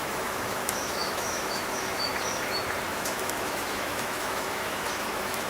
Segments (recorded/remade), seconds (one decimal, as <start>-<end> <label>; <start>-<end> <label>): 0.0-2.1 remade; 2.1-2.9 recorded; 2.9-5.5 remade